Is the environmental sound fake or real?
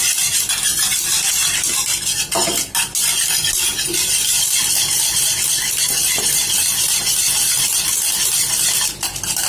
real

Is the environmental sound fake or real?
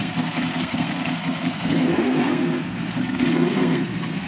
fake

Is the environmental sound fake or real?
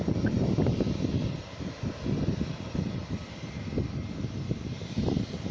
real